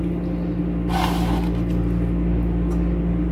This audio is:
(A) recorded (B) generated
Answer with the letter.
A